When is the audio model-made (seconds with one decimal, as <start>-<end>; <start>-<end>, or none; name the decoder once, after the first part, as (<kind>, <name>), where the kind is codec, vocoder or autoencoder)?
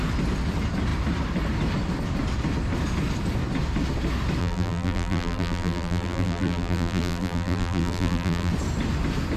4.4-8.5 (vocoder, BigVGAN v2)